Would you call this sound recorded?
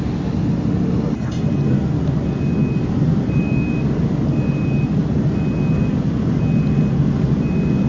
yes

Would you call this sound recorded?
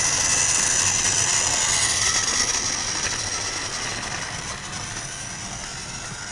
yes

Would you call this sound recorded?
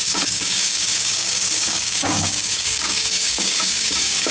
no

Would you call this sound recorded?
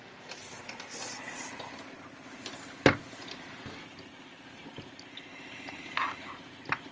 yes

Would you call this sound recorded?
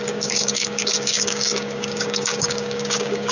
no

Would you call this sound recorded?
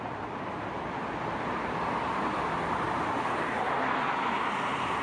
yes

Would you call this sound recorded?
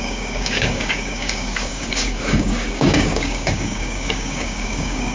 no